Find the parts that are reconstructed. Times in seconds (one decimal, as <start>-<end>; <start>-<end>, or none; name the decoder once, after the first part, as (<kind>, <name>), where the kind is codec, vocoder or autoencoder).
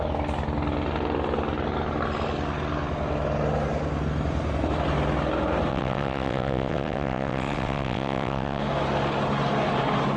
5.7-8.6 (vocoder, WaveNeXt)